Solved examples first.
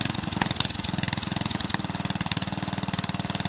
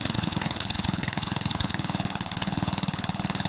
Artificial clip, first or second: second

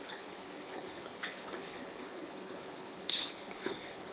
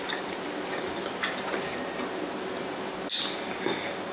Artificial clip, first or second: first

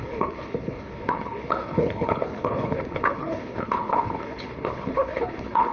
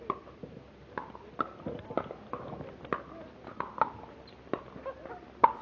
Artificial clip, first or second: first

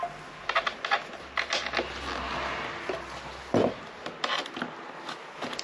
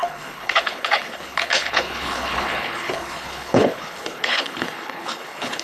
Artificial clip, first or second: second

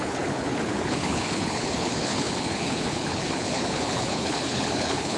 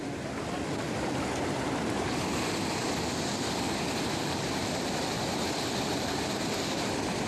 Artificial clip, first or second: first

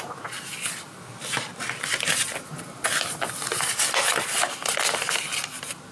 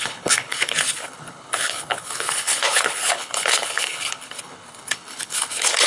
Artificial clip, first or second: second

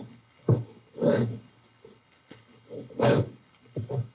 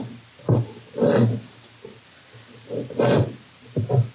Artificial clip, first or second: first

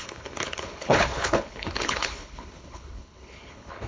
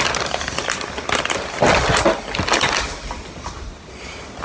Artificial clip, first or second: first